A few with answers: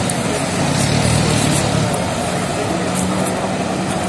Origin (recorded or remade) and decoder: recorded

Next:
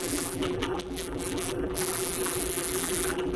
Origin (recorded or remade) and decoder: remade, vocoder, BigVGAN v2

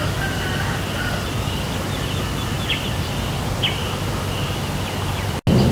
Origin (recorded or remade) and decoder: recorded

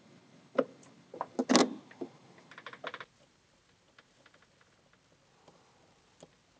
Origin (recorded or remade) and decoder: recorded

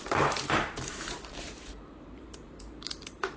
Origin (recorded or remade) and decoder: remade, vocoder, BigVGAN v2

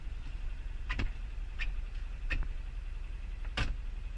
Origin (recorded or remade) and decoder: recorded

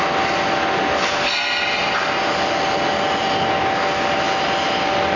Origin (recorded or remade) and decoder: recorded